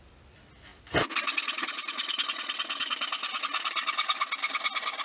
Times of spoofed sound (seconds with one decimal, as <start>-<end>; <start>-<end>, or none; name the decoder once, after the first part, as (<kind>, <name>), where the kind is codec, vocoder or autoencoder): none